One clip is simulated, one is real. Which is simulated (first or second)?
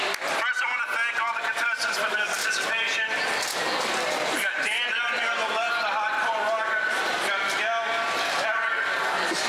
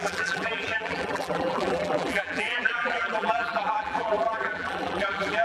second